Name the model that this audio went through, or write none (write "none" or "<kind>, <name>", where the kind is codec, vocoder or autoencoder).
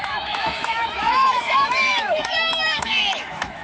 autoencoder, DAC-VAE